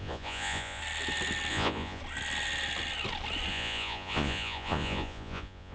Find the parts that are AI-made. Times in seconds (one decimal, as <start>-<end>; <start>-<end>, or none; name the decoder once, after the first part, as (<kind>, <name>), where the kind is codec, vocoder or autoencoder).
0.0-0.8 (vocoder, Vocos); 1.5-2.0; 3.5-5.7